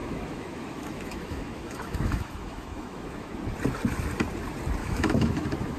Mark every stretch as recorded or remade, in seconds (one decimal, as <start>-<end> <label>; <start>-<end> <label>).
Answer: 0.0-3.3 remade; 3.3-4.8 recorded; 4.8-5.8 remade